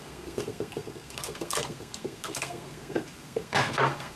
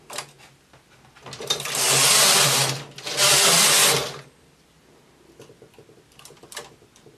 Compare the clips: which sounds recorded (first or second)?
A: second